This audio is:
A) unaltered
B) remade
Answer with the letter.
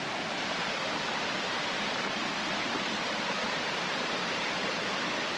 A